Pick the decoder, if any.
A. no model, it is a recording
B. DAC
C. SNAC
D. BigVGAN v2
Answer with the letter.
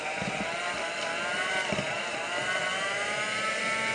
A